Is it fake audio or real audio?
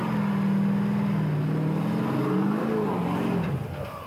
real